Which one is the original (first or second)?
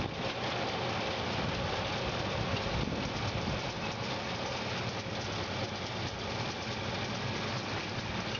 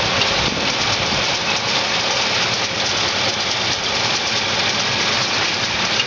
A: first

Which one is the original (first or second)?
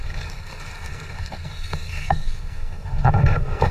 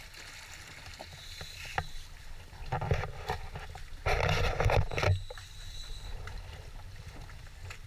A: second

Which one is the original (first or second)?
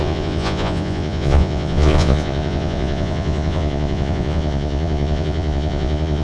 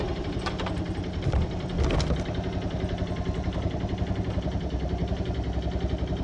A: second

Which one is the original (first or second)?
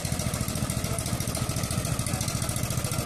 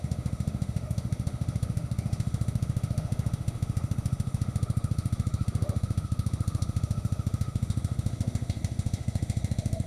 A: first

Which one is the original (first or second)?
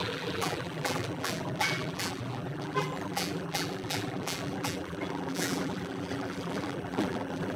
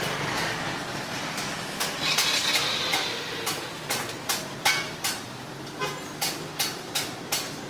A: second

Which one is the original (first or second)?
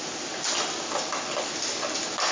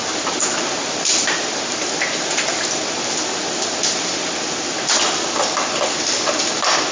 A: first